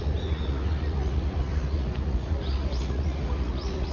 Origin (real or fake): fake